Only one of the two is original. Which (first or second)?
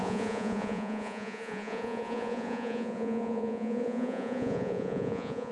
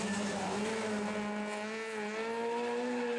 second